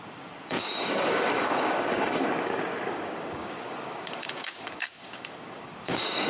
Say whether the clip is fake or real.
fake